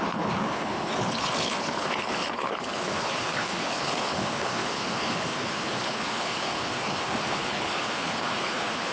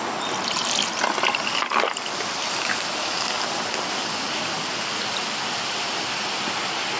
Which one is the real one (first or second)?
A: second